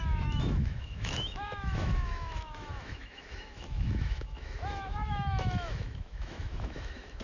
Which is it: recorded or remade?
remade